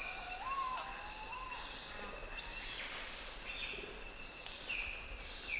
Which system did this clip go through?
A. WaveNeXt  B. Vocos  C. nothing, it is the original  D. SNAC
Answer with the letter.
C